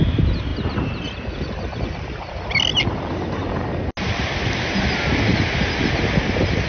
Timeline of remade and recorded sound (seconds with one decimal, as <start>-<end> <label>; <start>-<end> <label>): 0.0-6.7 recorded